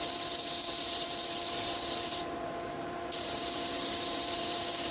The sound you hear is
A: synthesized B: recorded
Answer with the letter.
A